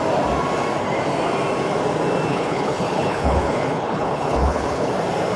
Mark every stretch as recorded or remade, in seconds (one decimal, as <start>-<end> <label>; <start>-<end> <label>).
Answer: 0.0-2.3 recorded; 2.3-4.9 remade; 4.9-5.4 recorded